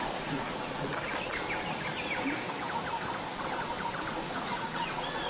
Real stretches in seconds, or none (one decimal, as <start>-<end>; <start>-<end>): 0.9-4.1